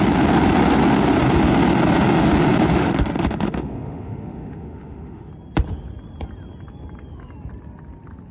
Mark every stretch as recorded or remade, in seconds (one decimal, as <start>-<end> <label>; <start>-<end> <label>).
0.0-2.7 recorded; 2.7-5.3 remade; 5.3-8.3 recorded